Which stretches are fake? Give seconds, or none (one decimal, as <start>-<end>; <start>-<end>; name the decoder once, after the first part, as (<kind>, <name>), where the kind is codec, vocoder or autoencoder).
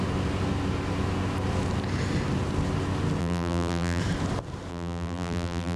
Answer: 3.2-4.0 (vocoder, BigVGAN v2); 4.7-5.8